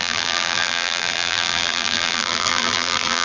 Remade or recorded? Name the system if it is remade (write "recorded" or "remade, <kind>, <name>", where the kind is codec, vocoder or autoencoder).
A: remade, vocoder, BigVGAN v2